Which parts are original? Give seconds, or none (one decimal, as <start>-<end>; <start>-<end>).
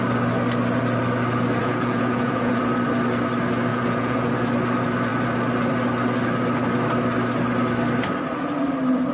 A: 0.0-1.6; 2.6-3.7; 4.3-9.1